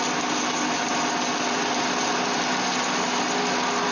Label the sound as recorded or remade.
recorded